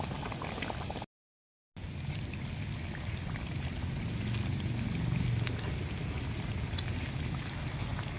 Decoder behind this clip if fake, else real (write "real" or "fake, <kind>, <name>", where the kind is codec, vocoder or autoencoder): real